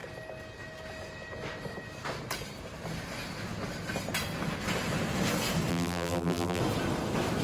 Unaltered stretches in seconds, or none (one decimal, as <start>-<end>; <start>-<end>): 0.0-5.7; 6.6-7.4